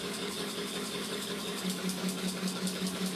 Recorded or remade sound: remade